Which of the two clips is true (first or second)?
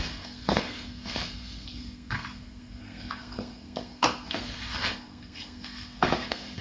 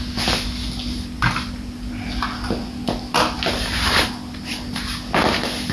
second